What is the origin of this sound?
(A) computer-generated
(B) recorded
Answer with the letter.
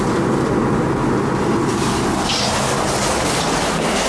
B